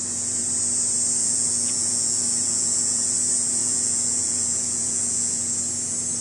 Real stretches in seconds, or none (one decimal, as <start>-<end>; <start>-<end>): 0.0-1.2; 3.1-3.6; 5.5-6.2